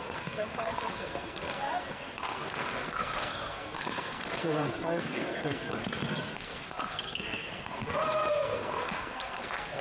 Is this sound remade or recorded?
remade